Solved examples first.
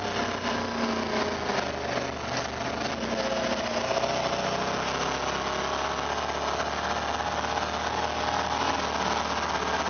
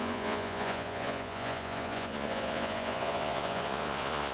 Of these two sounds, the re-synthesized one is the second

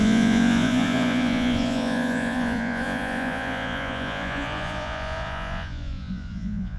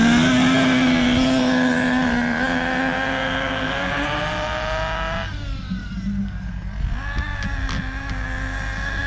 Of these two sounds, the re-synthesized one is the first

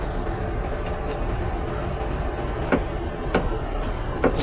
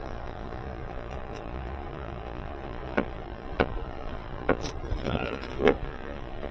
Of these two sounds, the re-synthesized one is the second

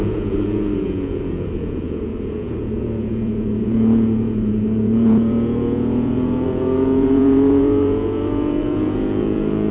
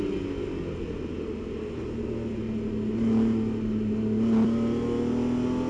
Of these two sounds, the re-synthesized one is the first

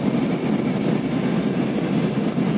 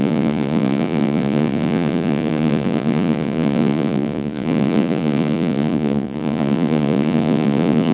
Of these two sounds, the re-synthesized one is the second